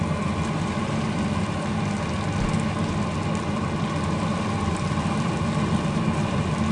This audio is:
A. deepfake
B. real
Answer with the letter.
B